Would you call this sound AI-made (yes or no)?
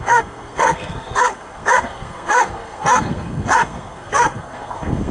yes